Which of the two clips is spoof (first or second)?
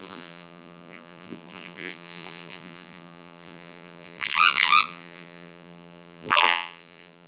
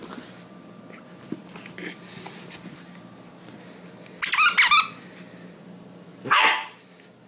first